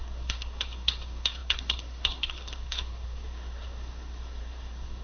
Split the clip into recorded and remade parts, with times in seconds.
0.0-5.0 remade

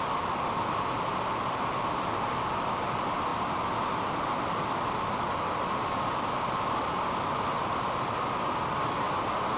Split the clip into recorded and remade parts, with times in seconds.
0.0-9.6 recorded

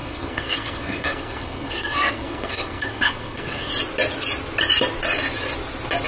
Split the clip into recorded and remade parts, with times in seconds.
0.0-3.7 remade; 3.7-6.1 recorded

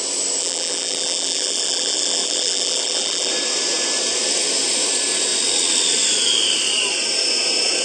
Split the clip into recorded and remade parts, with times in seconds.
0.0-0.4 recorded; 0.4-3.3 remade; 3.3-7.8 recorded

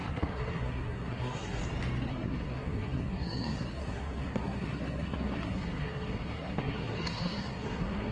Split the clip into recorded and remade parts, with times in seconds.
0.0-1.6 remade; 1.6-2.1 recorded; 2.1-8.1 remade